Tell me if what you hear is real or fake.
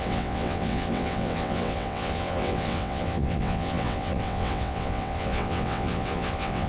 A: fake